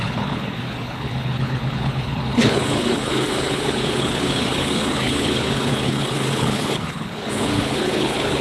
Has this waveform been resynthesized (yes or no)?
yes